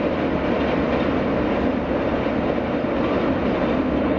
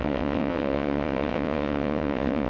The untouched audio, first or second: first